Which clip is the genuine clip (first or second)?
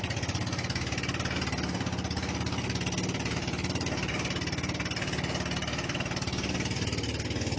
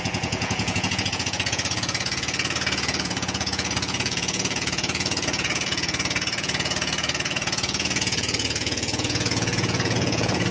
first